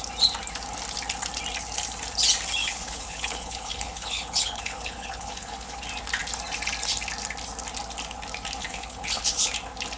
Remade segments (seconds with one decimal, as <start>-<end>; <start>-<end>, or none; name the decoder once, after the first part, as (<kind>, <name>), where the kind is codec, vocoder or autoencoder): 2.6-5.8 (codec, HILCodec); 8.6-9.5